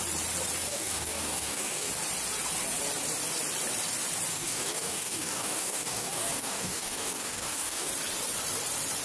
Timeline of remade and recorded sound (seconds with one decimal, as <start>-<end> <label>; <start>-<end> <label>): 0.0-0.7 recorded; 0.7-1.9 remade; 1.9-4.3 recorded; 4.3-7.9 remade; 7.9-9.0 recorded